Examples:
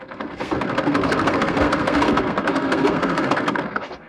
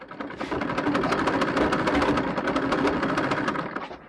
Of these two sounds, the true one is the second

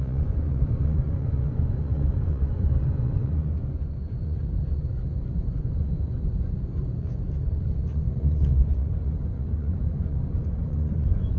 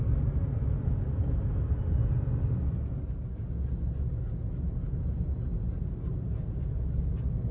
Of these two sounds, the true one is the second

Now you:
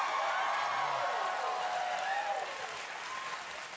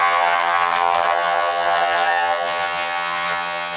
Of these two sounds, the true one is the first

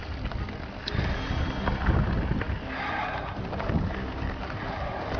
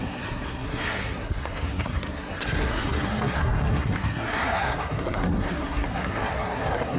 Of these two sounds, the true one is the first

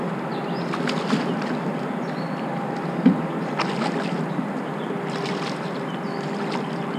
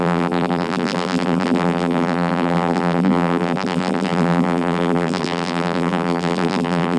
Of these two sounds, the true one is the first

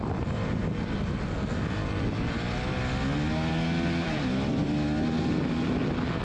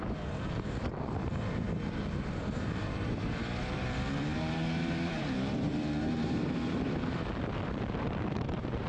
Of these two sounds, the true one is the first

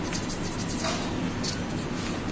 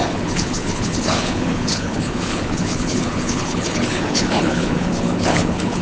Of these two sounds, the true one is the first